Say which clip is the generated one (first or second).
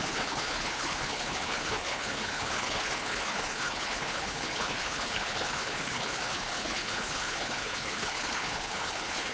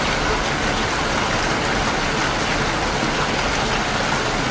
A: first